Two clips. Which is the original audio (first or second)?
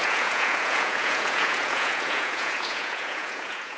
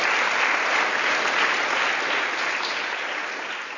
second